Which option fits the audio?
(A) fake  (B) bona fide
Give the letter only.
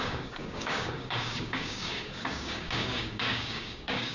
A